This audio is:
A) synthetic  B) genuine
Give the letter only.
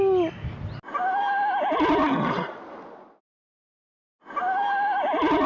B